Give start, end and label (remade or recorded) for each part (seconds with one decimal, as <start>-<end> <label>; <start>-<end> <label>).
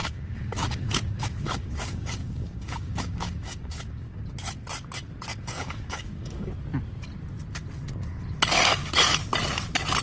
0.0-4.2 remade; 4.2-5.3 recorded; 5.3-6.5 remade; 6.5-10.0 recorded